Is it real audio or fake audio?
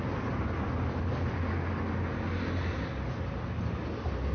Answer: real